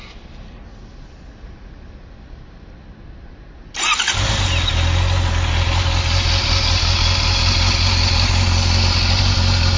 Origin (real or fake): real